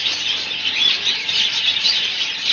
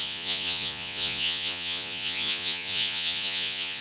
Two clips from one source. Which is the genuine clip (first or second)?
first